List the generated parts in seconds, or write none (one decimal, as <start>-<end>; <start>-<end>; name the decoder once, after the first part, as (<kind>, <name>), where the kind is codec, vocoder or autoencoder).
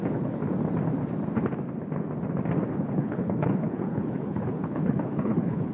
0.0-0.4 (codec, HILCodec); 2.7-5.7